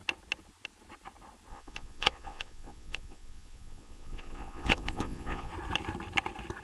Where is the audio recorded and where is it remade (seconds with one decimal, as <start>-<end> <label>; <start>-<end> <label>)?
0.0-1.5 recorded; 1.5-5.5 remade; 5.5-6.6 recorded